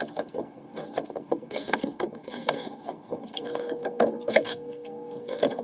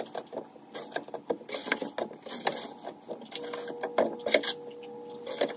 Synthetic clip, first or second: first